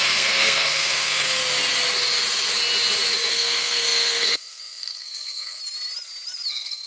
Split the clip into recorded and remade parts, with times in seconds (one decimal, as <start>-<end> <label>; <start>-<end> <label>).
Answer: 0.0-1.4 remade; 1.4-3.3 recorded; 3.3-5.6 remade; 5.6-6.5 recorded; 6.5-6.9 remade